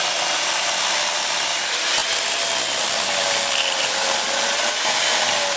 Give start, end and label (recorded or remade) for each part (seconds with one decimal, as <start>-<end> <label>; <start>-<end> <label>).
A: 0.0-2.0 recorded; 2.0-4.2 remade; 4.2-5.6 recorded